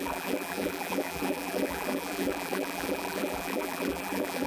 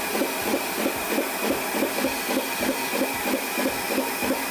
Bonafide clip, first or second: second